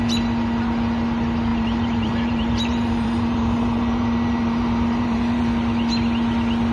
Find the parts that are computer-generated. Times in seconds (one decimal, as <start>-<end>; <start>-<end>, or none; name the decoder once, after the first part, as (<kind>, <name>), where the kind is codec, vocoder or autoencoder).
1.5-5.5 (vocoder, BigVGAN v2)